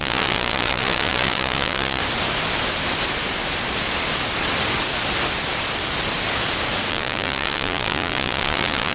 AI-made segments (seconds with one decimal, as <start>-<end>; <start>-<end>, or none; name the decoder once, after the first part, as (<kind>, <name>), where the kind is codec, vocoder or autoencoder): 0.0-2.0 (vocoder, Vocos); 6.9-8.9